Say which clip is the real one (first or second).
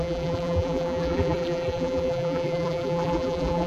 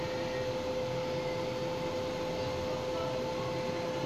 second